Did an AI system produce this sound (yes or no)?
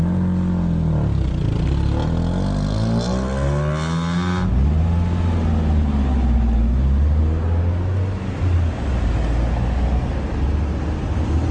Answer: no